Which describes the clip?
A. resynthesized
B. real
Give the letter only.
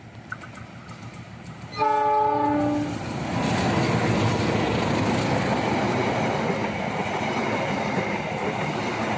B